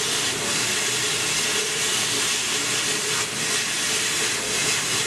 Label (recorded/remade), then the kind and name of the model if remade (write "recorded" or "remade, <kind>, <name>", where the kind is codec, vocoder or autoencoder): recorded